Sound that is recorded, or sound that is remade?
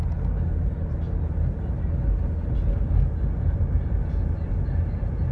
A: recorded